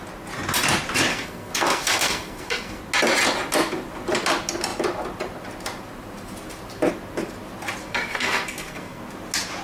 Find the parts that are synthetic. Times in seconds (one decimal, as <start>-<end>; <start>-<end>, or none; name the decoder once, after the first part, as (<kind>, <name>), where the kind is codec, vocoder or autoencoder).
1.1-2.8 (codec, SNAC); 7.8-9.0